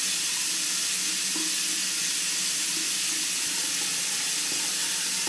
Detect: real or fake real